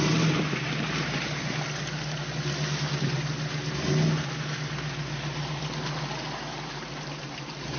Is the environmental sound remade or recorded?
recorded